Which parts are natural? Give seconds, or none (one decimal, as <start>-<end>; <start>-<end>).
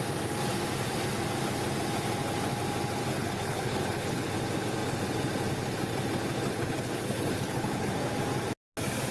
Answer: 0.0-3.1; 4.3-6.5; 7.9-9.1